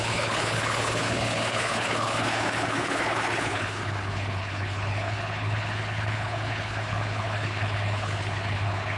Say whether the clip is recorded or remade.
remade